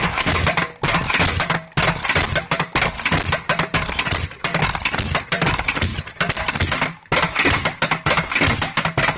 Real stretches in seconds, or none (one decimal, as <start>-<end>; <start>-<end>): 0.0-9.2